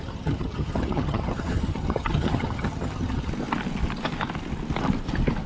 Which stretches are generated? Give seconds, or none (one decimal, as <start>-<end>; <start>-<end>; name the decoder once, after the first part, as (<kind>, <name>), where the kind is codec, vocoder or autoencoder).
0.0-3.3 (vocoder, HiFi-GAN)